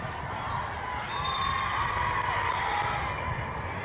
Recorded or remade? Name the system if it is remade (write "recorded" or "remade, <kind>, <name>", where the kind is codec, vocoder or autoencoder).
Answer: recorded